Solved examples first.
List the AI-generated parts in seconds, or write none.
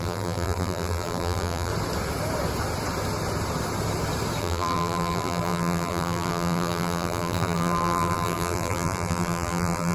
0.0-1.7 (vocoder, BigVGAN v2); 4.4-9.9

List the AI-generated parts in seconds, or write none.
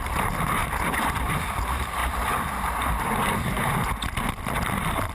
0.6-1.4 (vocoder, BigVGAN v2)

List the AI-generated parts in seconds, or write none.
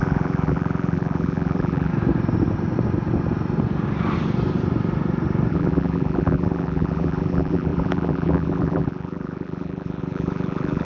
0.0-1.9 (vocoder, BigVGAN v2); 5.5-10.8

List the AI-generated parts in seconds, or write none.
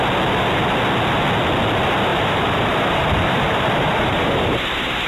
2.1-5.1 (vocoder, BigVGAN v2)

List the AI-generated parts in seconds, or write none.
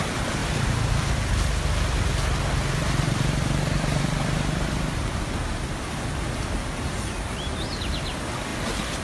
0.4-5.2 (vocoder, BigVGAN v2)